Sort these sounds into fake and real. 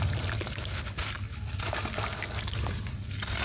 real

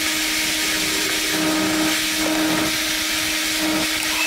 real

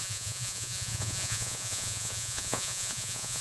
fake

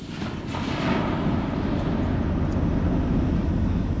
real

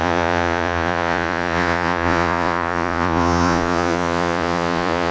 fake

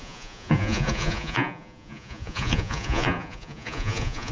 fake